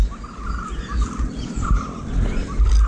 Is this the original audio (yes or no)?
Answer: yes